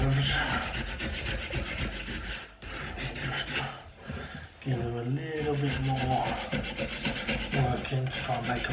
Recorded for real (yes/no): yes